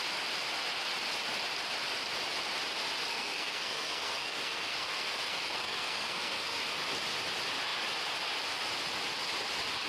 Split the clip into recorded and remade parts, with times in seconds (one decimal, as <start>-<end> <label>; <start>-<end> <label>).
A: 0.0-3.1 recorded; 3.1-6.6 remade; 6.6-9.9 recorded